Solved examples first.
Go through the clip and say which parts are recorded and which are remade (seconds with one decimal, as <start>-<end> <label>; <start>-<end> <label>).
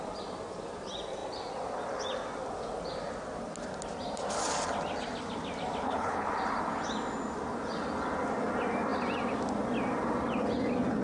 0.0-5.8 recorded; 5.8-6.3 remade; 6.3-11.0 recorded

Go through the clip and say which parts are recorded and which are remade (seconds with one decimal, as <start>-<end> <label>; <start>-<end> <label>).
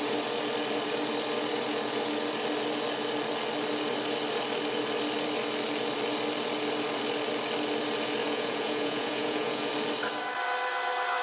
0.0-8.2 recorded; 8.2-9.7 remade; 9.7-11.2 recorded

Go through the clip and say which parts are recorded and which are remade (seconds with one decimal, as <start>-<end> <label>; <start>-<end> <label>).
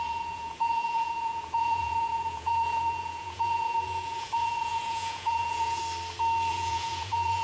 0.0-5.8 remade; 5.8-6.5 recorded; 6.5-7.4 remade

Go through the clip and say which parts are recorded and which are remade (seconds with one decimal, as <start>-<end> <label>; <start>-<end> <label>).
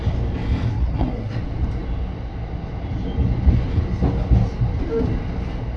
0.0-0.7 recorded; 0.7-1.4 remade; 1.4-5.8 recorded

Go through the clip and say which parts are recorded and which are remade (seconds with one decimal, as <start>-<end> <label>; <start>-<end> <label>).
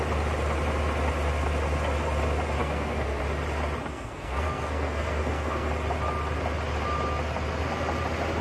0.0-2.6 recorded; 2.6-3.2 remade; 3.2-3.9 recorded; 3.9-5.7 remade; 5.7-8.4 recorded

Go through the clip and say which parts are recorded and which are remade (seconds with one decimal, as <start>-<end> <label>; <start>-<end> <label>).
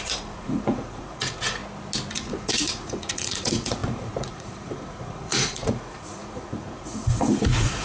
0.0-1.6 remade; 1.6-2.1 recorded; 2.1-7.8 remade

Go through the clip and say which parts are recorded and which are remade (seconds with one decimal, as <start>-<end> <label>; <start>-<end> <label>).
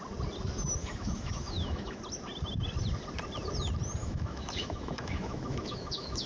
0.0-0.8 recorded; 0.8-2.0 remade; 2.0-4.0 recorded; 4.0-6.3 remade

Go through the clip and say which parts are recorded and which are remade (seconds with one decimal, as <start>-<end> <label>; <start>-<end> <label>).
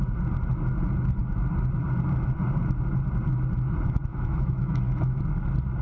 0.0-4.1 recorded; 4.1-5.2 remade; 5.2-5.8 recorded